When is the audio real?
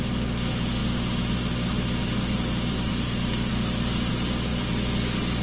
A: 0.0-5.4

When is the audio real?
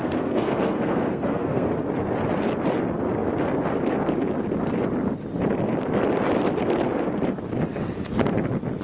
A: 1.7-8.8